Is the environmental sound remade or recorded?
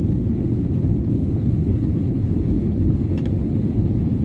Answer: remade